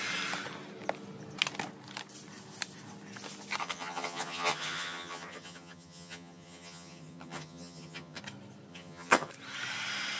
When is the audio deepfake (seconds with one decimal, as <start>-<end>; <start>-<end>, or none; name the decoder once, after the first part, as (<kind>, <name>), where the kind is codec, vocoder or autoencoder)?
3.6-8.2 (vocoder, HiFi-GAN); 8.7-9.3